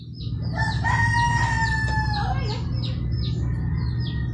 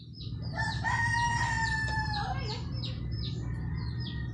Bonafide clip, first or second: first